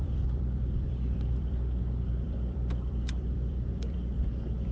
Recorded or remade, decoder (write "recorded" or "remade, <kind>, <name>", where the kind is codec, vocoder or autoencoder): remade, vocoder, BigVGAN v2